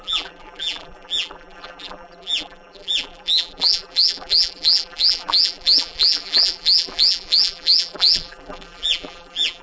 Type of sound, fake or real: fake